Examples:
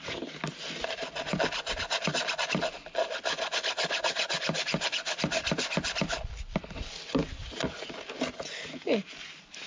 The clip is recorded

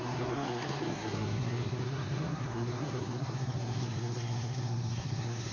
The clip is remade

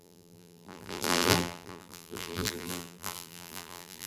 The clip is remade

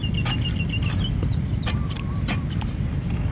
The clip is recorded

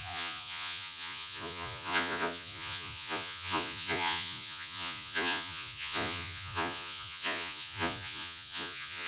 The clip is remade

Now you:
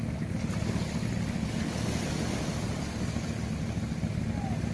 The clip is recorded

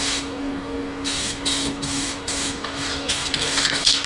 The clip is remade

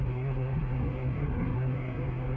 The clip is remade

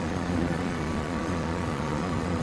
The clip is remade